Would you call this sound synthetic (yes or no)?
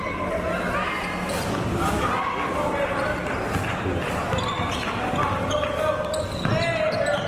no